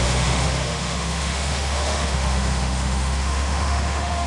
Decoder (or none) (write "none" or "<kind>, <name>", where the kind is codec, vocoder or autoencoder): autoencoder, DAC-VAE